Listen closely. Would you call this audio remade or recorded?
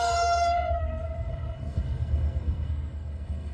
remade